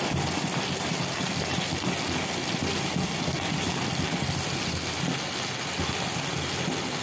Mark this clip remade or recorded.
recorded